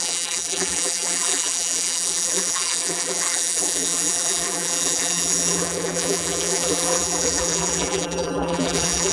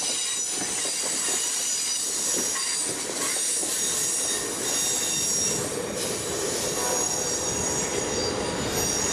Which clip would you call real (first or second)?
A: second